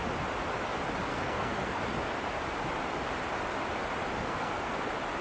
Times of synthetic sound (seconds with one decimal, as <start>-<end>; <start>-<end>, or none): 1.1-1.8; 4.2-4.8